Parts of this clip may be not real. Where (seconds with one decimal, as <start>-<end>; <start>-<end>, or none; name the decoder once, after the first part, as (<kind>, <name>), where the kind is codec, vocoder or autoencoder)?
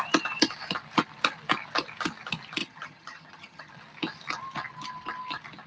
2.6-3.7 (vocoder, HiFi-GAN)